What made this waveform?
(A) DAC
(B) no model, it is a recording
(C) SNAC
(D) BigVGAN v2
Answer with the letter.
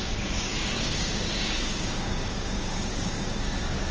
A